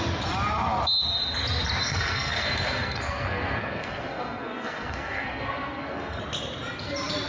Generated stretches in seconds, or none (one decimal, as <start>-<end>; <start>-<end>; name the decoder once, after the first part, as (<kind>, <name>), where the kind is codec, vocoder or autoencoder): 1.8-6.2 (codec, SNAC)